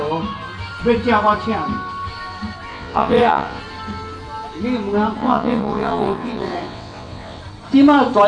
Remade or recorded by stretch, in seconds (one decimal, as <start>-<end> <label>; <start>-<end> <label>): 0.0-2.7 recorded; 2.7-3.6 remade; 3.6-5.2 recorded; 5.2-7.4 remade; 7.4-8.3 recorded